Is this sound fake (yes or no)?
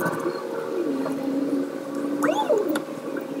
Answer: no